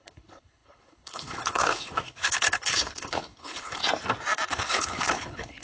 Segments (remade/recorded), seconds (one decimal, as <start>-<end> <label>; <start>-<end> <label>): 0.0-3.8 remade; 3.8-4.5 recorded; 4.5-5.6 remade